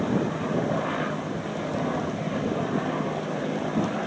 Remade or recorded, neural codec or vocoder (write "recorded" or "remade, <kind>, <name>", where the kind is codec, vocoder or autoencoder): recorded